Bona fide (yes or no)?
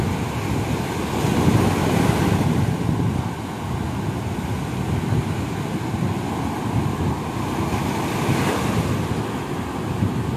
yes